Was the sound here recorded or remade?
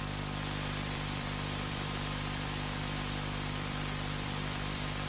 remade